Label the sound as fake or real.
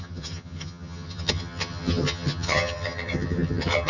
fake